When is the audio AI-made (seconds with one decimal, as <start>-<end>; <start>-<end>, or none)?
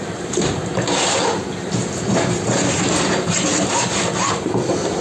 none